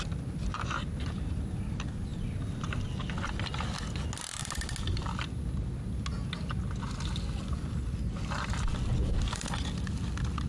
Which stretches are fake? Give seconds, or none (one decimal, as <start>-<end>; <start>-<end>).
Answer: none

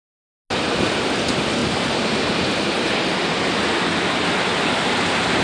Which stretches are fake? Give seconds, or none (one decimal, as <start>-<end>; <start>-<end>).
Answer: 1.6-2.5

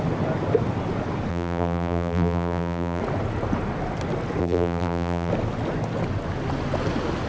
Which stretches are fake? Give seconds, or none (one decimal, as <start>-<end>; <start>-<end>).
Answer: 1.3-3.0; 4.4-5.3